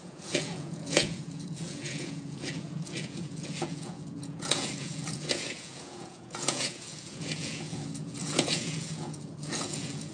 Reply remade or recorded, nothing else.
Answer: remade